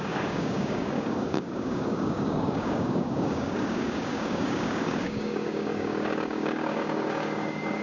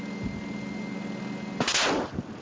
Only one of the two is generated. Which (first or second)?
first